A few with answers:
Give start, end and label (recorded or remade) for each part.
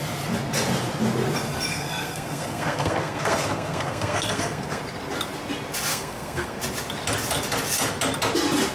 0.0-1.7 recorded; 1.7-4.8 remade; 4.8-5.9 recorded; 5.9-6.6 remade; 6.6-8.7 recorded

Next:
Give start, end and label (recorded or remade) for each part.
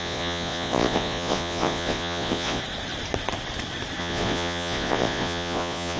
0.0-2.6 remade; 2.6-4.0 recorded; 4.0-6.0 remade